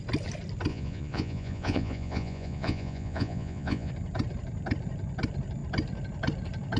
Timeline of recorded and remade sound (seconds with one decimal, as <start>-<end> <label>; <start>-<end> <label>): 0.0-0.7 recorded; 0.7-3.9 remade; 3.9-6.8 recorded